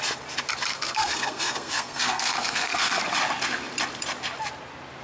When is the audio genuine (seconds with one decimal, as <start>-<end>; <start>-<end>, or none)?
0.0-0.7; 3.0-5.0